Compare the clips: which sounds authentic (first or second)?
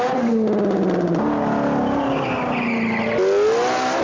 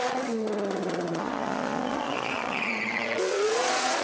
first